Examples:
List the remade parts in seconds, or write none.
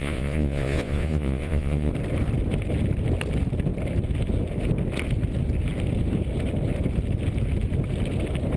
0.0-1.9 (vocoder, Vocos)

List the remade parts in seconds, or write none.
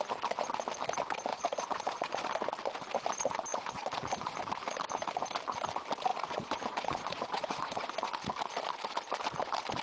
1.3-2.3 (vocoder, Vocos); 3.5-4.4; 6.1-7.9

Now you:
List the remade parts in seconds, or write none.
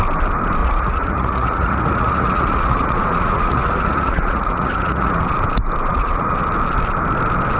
0.6-5.2 (vocoder, Vocos); 5.9-6.5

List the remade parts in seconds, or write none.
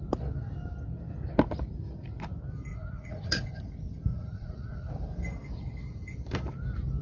2.7-3.6 (vocoder, Vocos); 4.1-4.9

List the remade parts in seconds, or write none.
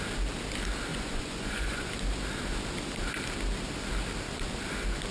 0.9-1.9 (vocoder, Vocos)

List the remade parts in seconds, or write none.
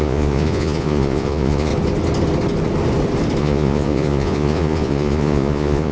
0.0-1.7 (vocoder, Vocos); 3.4-5.9